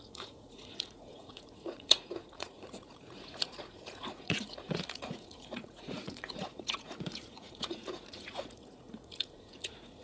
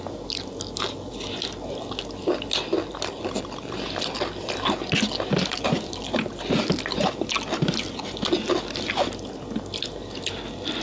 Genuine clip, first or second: second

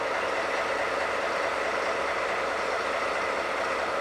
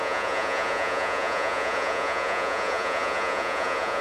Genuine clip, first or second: first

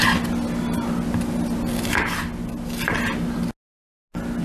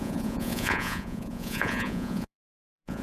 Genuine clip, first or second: first